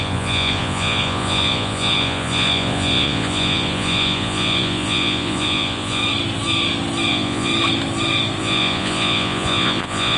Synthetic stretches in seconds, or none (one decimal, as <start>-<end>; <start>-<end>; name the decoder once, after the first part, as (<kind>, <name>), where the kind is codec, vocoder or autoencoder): 0.0-6.0 (vocoder, Vocos); 7.1-7.5; 8.4-10.2